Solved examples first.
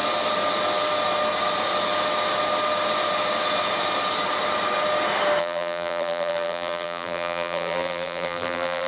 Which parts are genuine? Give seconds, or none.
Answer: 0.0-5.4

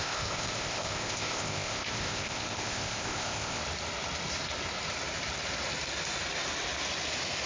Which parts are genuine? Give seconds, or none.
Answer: 3.6-7.5

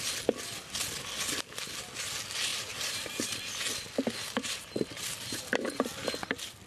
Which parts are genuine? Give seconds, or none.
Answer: 0.0-2.5; 3.3-4.2; 5.9-6.7

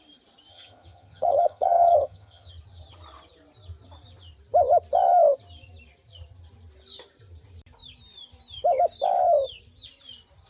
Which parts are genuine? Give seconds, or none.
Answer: 0.0-0.5; 2.5-10.5